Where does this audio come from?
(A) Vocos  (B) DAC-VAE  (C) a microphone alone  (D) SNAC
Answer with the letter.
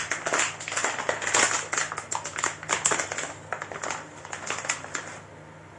C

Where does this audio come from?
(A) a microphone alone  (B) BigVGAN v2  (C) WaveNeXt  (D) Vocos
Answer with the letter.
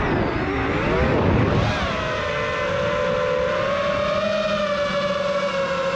A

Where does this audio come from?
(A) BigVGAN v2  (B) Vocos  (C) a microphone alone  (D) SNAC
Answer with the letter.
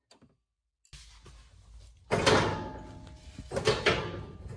C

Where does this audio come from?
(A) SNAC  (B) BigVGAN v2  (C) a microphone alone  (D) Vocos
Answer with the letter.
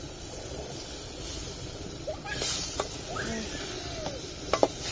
C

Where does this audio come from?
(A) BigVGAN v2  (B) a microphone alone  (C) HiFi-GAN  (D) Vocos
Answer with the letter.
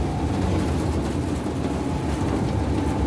B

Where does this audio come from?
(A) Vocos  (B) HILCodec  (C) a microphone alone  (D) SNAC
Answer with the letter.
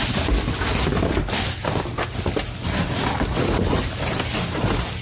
C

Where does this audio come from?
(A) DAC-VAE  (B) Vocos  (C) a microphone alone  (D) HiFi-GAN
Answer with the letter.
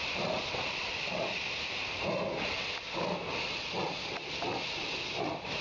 C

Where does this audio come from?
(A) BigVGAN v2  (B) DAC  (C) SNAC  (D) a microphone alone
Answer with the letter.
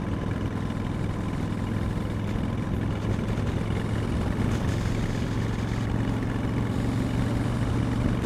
D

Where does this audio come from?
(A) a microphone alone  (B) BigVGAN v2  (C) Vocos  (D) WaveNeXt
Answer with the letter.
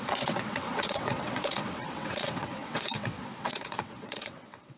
D